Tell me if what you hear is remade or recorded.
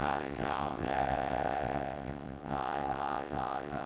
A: remade